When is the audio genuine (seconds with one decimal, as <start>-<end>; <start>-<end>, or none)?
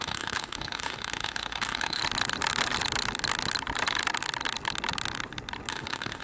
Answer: 2.0-5.7